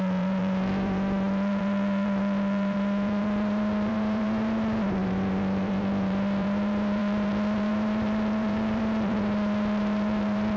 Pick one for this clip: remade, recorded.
remade